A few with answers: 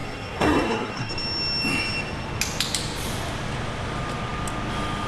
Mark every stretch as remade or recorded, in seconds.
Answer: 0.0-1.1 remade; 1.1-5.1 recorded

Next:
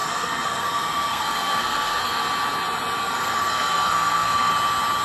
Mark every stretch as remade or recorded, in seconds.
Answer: 0.0-2.2 remade; 2.2-3.0 recorded; 3.0-4.5 remade; 4.5-5.0 recorded

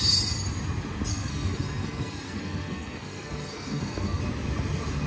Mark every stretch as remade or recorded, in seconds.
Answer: 0.0-1.1 recorded; 1.1-4.2 remade; 4.2-5.1 recorded

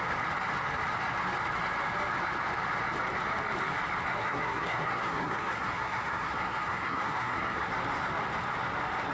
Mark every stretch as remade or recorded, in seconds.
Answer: 0.0-4.2 recorded; 4.2-7.7 remade; 7.7-9.1 recorded